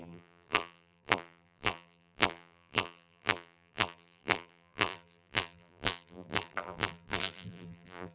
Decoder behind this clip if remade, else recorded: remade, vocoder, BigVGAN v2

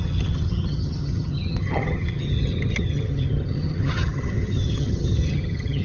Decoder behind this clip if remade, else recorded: remade, vocoder, HiFi-GAN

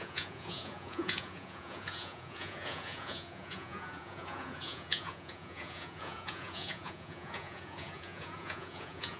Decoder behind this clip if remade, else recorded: remade, vocoder, Vocos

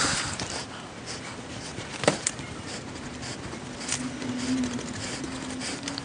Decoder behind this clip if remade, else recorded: recorded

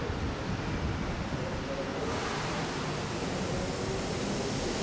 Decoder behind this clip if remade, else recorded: recorded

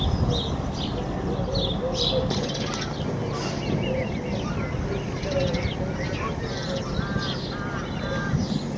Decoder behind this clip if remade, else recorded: recorded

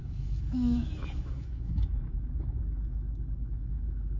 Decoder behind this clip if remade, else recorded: remade, autoencoder, DAC-VAE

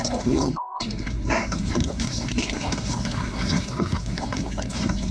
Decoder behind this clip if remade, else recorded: remade, codec, SNAC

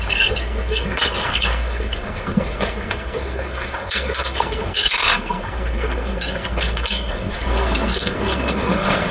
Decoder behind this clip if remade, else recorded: remade, codec, SNAC